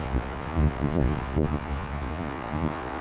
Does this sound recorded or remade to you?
remade